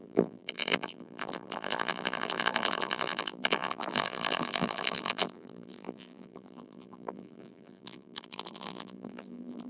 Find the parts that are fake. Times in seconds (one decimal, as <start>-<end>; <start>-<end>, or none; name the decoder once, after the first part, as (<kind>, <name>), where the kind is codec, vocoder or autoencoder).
0.0-9.7 (vocoder, BigVGAN v2)